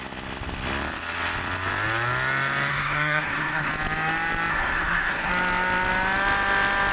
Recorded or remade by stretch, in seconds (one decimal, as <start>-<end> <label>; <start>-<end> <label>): 0.0-2.7 recorded; 2.7-3.7 remade; 3.7-4.5 recorded; 4.5-5.3 remade; 5.3-6.9 recorded